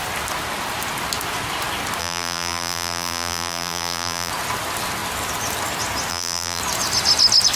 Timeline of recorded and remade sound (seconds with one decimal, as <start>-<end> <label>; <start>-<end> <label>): 0.0-2.0 recorded; 2.0-4.3 remade; 4.3-6.1 recorded; 6.1-6.6 remade; 6.6-7.6 recorded

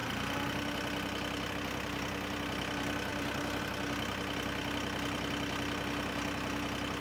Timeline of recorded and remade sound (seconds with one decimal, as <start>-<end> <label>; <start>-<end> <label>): 0.0-7.0 recorded

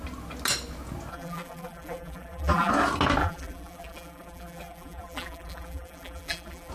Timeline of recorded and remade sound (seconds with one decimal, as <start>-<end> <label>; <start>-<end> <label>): 0.0-1.1 recorded; 1.1-2.7 remade; 2.7-3.2 recorded; 3.2-6.7 remade